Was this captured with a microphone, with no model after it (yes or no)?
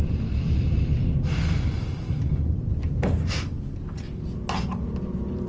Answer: yes